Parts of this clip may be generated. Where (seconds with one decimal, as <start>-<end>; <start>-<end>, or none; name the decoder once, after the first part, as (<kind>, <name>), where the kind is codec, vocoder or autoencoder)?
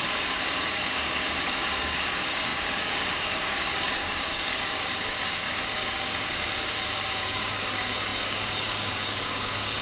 0.0-9.8 (codec, DAC)